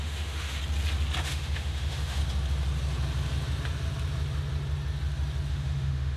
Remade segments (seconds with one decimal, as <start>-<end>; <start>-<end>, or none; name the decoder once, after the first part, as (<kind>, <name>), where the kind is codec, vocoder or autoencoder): 0.0-0.6 (autoencoder, DAC-VAE); 1.2-2.2; 5.5-6.2